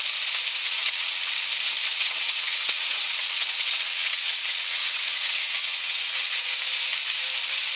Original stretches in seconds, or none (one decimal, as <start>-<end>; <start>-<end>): 0.0-0.6; 1.3-1.9; 6.6-7.8